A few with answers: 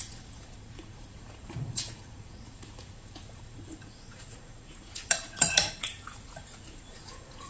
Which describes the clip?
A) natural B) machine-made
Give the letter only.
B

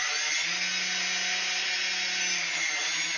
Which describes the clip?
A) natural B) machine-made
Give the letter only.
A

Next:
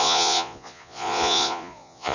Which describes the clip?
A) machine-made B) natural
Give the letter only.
A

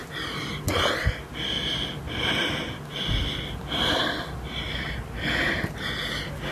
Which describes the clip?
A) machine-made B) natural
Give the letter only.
B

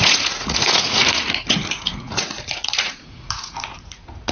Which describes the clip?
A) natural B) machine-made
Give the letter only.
B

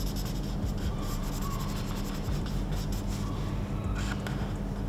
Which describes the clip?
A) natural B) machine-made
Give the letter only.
A